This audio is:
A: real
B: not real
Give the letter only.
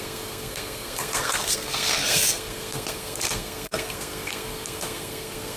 B